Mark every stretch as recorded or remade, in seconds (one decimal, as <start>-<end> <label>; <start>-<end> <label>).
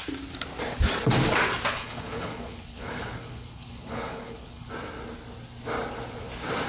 0.0-1.7 recorded; 1.7-4.7 remade; 4.7-6.7 recorded